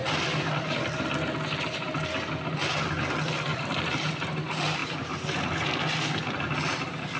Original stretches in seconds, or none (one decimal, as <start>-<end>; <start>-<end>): 0.0-3.5; 4.1-4.8; 5.3-7.2